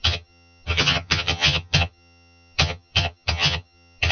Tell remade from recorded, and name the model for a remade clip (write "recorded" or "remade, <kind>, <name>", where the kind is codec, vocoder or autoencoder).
remade, vocoder, HiFi-GAN